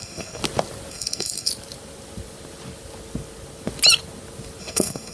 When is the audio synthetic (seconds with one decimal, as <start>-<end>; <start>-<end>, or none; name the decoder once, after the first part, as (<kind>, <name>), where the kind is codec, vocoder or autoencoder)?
0.0-0.4 (codec, SNAC); 0.9-1.5; 4.6-5.1